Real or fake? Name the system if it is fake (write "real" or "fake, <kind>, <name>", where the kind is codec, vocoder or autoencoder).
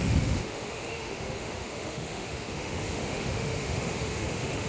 fake, autoencoder, DAC-VAE